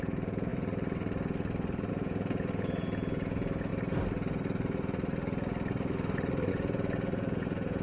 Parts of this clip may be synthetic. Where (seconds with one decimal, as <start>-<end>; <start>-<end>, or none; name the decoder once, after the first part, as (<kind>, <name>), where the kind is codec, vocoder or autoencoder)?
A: 0.0-0.5 (vocoder, Vocos); 1.9-3.7; 6.5-7.8